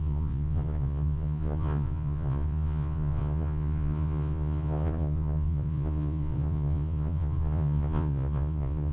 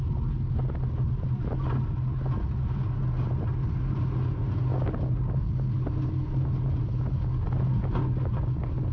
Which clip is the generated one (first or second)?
first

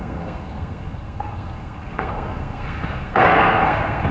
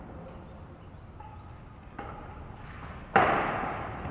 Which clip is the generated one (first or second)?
first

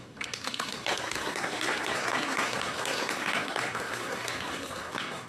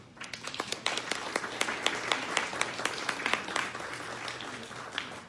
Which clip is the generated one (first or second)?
first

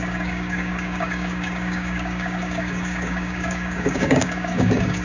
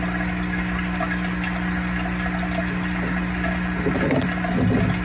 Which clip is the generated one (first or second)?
first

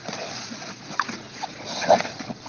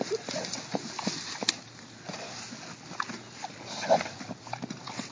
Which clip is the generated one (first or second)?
first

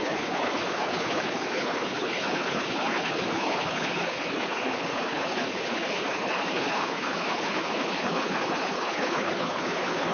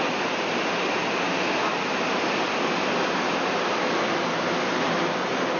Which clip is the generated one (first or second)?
first